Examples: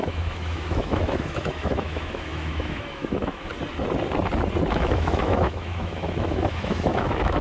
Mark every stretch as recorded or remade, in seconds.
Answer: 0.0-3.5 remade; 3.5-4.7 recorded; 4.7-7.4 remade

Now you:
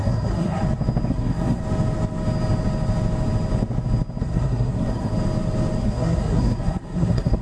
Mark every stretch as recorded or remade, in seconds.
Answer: 0.0-0.6 remade; 0.6-1.1 recorded; 1.1-1.6 remade; 1.6-4.2 recorded; 4.2-5.1 remade; 5.1-5.8 recorded; 5.8-7.4 remade

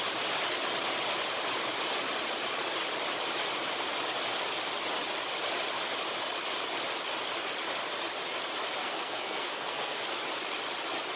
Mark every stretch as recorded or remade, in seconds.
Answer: 0.0-8.8 recorded; 8.8-10.0 remade; 10.0-11.2 recorded

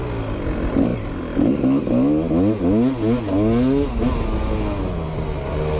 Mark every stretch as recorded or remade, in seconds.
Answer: 0.0-5.8 recorded